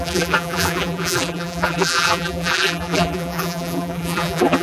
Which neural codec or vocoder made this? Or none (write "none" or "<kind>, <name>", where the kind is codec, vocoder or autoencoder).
vocoder, BigVGAN v2